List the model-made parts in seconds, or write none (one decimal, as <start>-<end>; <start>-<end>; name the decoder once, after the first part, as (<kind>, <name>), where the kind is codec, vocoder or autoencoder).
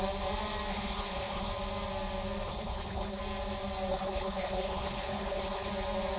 0.7-1.5 (codec, HILCodec); 2.5-3.2; 3.9-5.7